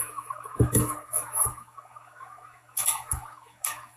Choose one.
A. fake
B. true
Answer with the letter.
A